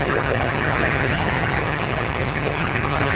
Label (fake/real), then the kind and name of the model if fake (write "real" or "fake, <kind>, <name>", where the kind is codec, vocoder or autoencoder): fake, vocoder, HiFi-GAN